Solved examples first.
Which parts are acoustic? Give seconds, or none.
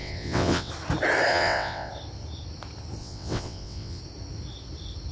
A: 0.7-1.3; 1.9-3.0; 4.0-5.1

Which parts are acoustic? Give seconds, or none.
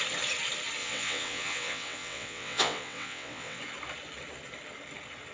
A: 0.0-0.8; 3.6-5.3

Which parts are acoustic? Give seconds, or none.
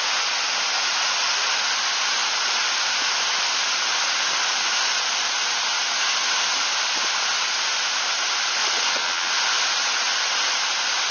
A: 0.0-8.6; 9.3-11.1